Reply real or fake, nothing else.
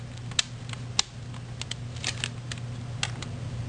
real